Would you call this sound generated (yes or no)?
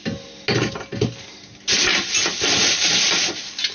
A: no